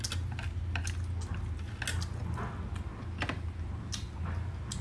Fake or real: real